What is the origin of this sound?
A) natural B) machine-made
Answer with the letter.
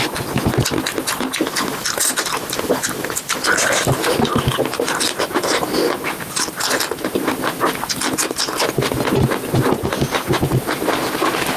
A